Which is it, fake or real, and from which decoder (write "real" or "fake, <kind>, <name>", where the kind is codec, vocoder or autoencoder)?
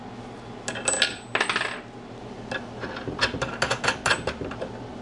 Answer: real